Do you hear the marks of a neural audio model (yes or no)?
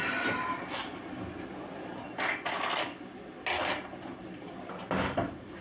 no